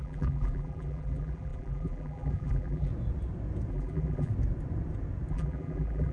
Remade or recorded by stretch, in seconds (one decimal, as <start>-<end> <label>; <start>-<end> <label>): 0.0-2.9 remade; 2.9-3.7 recorded; 3.7-4.3 remade; 4.3-5.3 recorded; 5.3-6.1 remade